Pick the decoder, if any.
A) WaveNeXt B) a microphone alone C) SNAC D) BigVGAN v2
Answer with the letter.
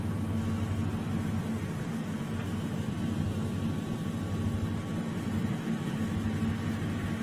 B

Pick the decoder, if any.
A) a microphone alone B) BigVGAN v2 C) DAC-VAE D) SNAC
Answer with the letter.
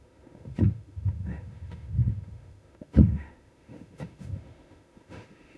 C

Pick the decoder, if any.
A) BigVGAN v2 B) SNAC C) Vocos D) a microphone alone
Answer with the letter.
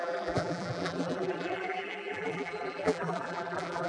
A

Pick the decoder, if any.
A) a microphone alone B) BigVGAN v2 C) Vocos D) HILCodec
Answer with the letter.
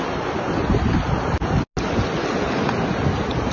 A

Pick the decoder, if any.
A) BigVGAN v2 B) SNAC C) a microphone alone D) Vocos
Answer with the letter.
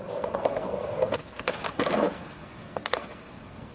B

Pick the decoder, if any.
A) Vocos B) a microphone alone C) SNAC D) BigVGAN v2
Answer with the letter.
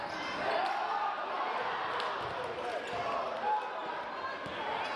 B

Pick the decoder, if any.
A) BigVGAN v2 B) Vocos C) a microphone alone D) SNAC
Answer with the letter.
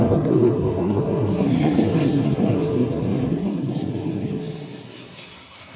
D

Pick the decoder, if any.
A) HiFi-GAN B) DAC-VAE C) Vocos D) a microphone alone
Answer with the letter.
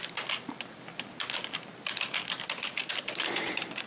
D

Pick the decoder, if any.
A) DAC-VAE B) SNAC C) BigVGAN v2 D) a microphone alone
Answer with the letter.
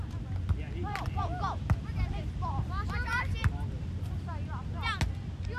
D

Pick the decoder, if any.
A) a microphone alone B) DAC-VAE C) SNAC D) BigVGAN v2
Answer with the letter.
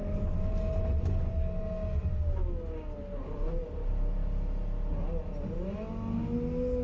A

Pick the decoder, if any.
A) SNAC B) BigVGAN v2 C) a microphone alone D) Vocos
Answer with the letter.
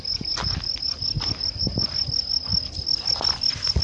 C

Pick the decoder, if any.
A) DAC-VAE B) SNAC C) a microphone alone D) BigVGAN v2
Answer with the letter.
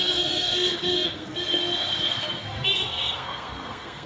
B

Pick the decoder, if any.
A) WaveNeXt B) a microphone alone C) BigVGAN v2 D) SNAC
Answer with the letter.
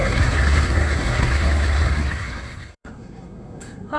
D